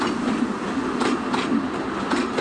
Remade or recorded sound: recorded